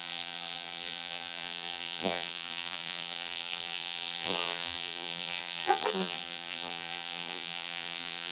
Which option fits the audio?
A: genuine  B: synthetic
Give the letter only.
B